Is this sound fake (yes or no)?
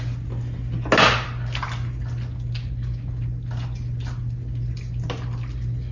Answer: no